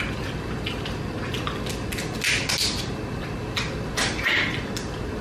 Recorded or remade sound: recorded